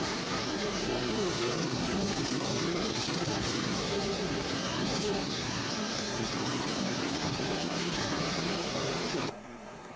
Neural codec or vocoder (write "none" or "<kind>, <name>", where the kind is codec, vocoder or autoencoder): codec, SNAC